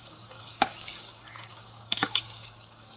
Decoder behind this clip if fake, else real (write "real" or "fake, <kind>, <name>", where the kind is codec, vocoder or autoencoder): fake, codec, DAC